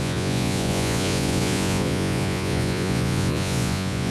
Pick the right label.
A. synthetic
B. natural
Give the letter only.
A